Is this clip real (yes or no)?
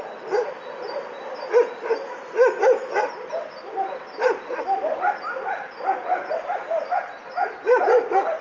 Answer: yes